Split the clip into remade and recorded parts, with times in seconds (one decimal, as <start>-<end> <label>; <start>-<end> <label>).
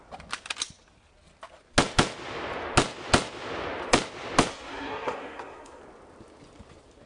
0.0-4.5 recorded; 4.5-5.8 remade; 5.8-7.1 recorded